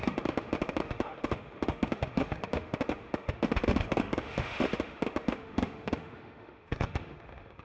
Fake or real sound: fake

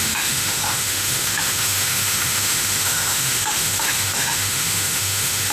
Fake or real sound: fake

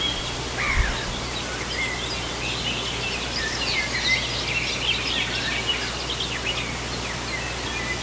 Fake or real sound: real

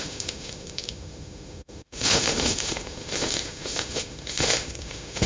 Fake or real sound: fake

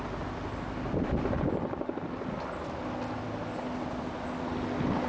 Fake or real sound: real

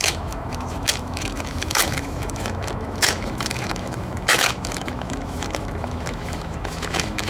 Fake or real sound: fake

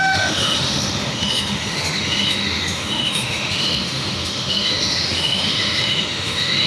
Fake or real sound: fake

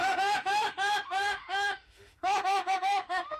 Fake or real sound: fake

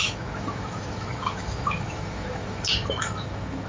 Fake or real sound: fake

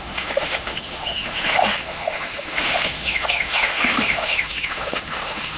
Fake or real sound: fake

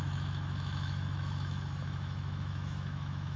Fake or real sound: fake